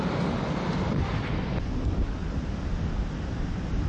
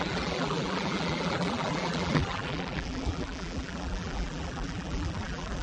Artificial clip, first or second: second